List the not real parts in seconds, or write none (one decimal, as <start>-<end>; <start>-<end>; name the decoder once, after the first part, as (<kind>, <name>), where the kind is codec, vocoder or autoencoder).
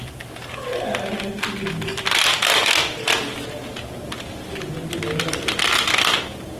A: 0.0-0.9 (vocoder, BigVGAN v2)